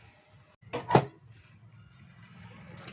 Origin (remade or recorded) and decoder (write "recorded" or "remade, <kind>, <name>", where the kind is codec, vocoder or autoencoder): recorded